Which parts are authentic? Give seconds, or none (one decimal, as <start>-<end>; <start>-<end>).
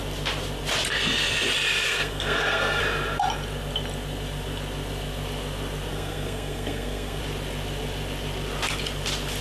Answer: 0.0-1.9; 2.8-5.9; 7.2-9.4